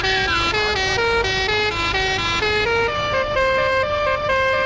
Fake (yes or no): no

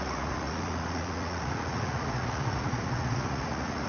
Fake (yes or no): yes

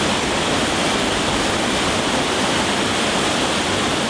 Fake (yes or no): no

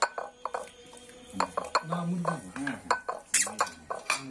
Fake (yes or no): no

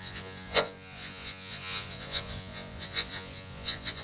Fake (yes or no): yes